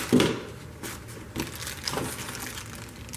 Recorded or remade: recorded